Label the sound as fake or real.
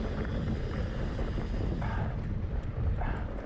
real